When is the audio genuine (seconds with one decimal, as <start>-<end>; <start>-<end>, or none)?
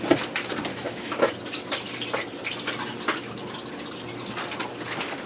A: 0.0-0.7; 1.3-5.3